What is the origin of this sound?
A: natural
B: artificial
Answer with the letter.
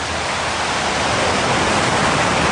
A